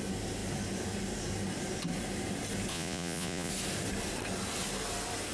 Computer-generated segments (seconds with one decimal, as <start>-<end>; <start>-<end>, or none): 2.7-3.5